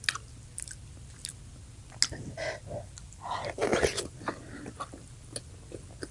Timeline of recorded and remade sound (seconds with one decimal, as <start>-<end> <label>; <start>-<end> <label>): 0.0-6.1 recorded